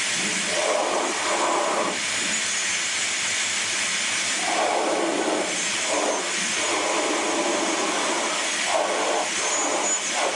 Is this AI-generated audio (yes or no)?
no